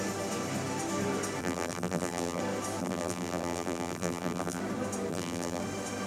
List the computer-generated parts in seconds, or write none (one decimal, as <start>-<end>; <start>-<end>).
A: 1.4-2.4; 2.8-4.6; 5.1-5.6